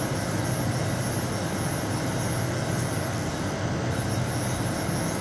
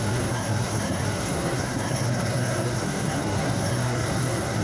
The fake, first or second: second